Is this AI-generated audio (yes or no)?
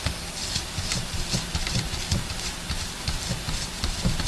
no